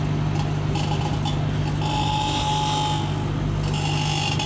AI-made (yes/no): no